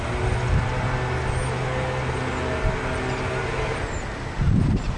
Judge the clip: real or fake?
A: real